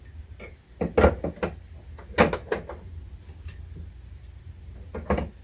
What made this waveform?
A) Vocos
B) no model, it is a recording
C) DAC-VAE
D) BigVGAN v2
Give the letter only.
B